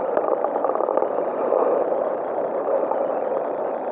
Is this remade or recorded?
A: recorded